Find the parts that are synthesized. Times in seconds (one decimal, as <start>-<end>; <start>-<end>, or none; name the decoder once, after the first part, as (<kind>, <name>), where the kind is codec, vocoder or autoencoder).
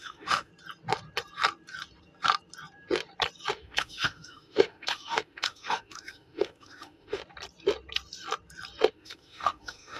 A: 0.0-0.5 (autoencoder, DAC-VAE); 3.5-7.2; 8.9-10.0